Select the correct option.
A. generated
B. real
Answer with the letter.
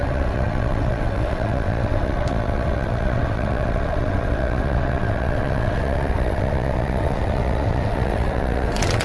A